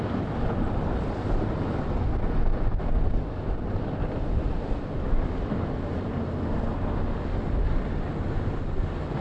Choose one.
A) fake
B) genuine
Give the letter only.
B